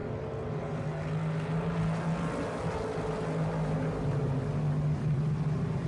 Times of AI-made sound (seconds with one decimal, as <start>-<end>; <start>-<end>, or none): none